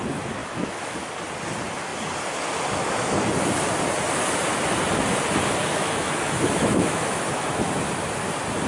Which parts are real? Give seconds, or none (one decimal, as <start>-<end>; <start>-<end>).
0.0-0.4; 1.1-5.6; 7.7-8.7